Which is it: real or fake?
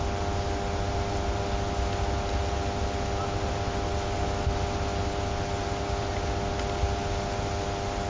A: real